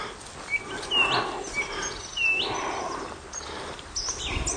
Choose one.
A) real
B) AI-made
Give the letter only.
A